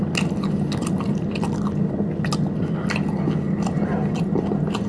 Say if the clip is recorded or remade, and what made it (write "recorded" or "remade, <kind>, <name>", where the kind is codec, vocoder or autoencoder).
recorded